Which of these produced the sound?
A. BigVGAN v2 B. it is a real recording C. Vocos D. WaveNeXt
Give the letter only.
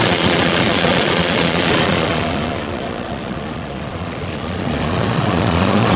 C